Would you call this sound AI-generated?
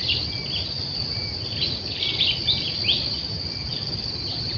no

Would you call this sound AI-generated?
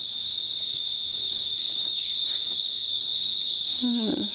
yes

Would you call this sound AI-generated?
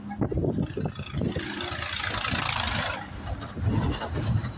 no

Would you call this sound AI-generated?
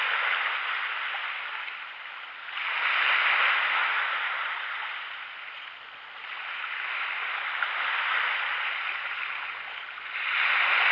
no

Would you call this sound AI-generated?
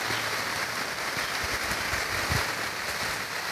no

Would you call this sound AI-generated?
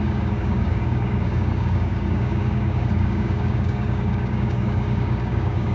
yes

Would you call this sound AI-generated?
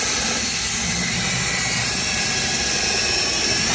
no